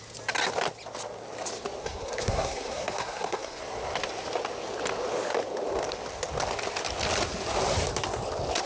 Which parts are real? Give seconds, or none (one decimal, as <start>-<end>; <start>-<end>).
0.0-1.8; 3.6-8.7

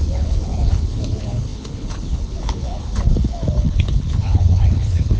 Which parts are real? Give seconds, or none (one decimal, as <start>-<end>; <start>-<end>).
none